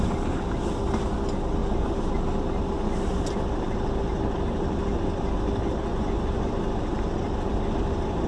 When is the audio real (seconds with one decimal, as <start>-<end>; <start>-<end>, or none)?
0.0-5.9; 6.5-8.3